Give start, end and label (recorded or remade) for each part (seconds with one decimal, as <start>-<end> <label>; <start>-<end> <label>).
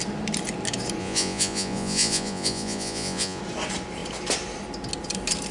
0.0-1.0 recorded; 1.0-3.4 remade; 3.4-5.5 recorded